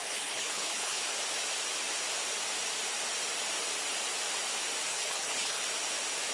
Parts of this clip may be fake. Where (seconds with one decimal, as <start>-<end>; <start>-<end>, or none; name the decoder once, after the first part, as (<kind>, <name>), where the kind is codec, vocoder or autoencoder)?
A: 0.0-1.0 (codec, HILCodec); 4.9-5.6